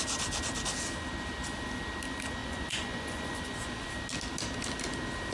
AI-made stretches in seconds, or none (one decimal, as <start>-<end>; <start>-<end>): 2.4-3.9